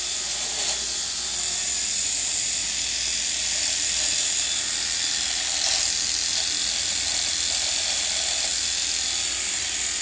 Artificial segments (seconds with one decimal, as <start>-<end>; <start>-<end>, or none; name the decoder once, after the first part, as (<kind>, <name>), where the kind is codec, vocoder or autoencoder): none